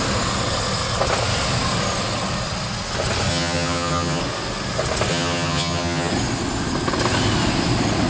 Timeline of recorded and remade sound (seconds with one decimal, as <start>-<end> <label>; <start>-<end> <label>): 0.0-3.3 recorded; 3.3-4.2 remade; 4.2-5.1 recorded; 5.1-6.1 remade; 6.1-8.1 recorded